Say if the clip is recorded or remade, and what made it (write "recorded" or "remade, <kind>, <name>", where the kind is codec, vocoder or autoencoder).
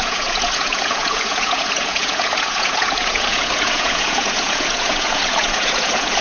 remade, vocoder, Vocos